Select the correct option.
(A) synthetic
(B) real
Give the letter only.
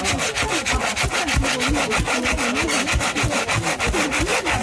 B